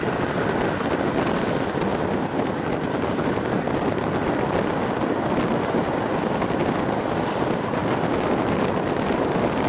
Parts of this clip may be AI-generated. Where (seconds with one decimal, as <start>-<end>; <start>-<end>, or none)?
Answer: none